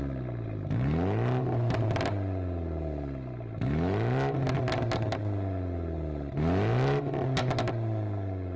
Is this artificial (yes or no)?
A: no